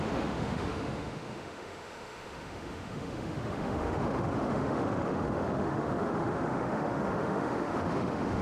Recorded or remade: remade